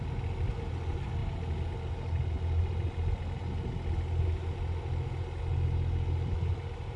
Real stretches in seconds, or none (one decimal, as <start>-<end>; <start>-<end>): 0.0-7.0